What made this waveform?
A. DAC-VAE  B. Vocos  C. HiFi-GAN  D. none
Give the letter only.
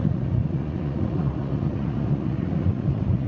B